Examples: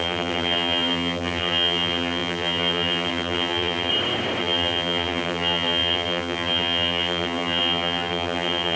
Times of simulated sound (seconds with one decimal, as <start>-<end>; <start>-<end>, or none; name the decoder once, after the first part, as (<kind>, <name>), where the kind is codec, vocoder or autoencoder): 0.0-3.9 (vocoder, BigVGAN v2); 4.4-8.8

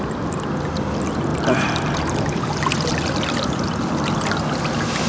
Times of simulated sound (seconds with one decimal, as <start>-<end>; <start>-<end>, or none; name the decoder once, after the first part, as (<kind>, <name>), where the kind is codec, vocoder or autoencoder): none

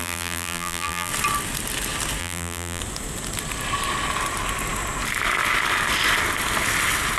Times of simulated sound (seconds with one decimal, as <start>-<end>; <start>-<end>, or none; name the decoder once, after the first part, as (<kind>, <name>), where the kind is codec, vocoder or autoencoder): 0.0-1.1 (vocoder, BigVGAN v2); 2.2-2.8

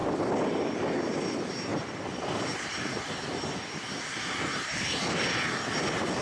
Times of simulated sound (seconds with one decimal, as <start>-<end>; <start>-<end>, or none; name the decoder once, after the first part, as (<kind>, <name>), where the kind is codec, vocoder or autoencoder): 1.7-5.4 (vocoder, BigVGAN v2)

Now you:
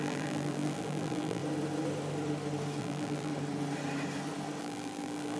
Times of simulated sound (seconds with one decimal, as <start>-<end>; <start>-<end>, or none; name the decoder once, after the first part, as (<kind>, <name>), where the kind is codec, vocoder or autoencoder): 0.0-1.4 (vocoder, BigVGAN v2); 2.8-3.3; 4.6-5.4